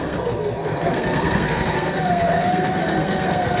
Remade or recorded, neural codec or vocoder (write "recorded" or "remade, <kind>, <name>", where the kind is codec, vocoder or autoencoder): remade, codec, SNAC